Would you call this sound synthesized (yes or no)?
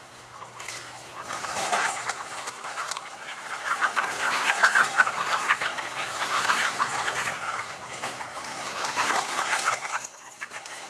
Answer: yes